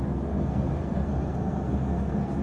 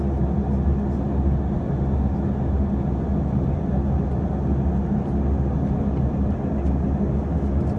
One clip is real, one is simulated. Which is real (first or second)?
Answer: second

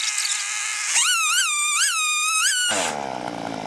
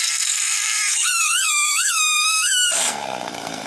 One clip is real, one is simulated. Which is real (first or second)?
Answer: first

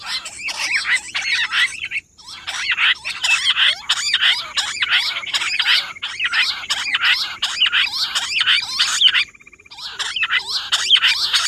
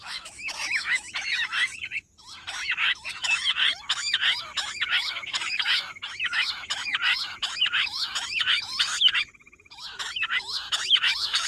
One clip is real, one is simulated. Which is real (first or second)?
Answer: first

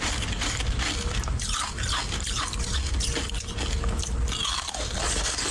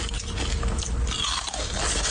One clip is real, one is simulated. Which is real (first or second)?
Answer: second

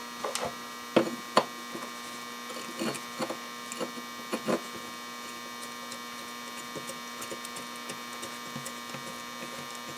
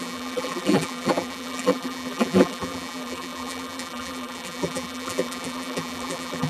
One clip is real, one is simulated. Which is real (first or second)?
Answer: first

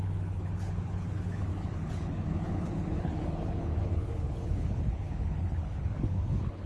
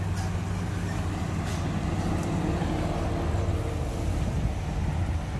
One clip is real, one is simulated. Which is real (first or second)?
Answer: second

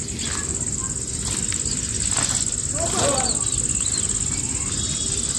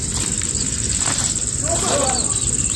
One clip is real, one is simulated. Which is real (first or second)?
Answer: first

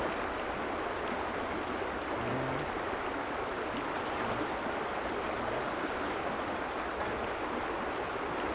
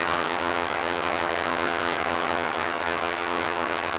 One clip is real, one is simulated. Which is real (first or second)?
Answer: first